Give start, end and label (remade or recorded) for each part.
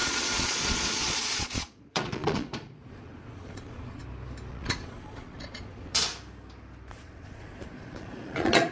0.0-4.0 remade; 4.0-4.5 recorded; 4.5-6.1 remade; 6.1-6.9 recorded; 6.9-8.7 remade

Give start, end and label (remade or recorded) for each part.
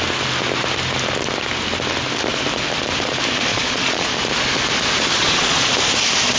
0.0-3.5 recorded; 3.5-4.1 remade; 4.1-5.2 recorded; 5.2-5.7 remade; 5.7-6.4 recorded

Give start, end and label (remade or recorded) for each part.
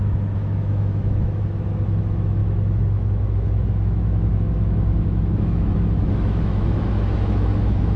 0.0-8.0 remade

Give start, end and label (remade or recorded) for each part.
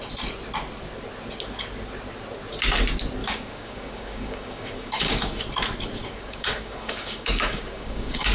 0.0-3.2 recorded; 3.2-5.4 remade; 5.4-6.0 recorded; 6.0-8.3 remade